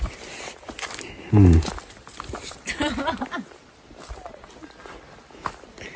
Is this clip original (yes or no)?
yes